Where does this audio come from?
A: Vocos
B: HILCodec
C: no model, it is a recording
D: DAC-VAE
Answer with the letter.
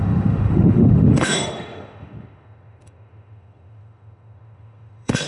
D